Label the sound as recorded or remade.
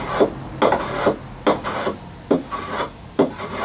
recorded